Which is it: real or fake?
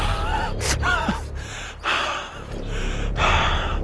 fake